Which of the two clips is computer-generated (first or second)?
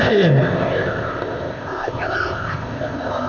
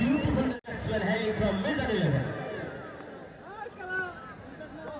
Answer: first